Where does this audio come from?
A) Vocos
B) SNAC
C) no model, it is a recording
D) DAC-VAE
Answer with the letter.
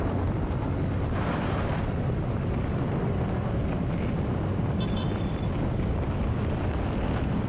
C